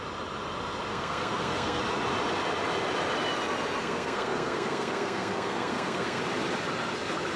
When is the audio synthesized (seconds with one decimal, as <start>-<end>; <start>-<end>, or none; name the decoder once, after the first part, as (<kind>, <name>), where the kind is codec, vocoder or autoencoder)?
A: 0.9-1.8 (codec, SNAC); 3.8-6.2